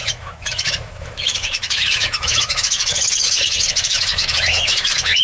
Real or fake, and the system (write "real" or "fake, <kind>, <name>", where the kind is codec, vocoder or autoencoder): fake, autoencoder, DAC-VAE